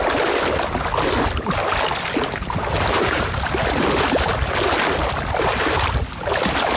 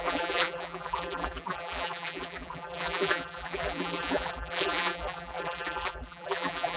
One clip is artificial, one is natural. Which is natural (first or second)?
first